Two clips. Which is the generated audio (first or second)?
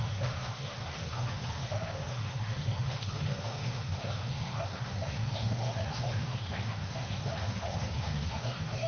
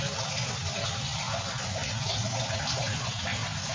first